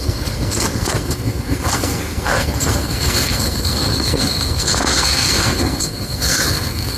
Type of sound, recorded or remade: remade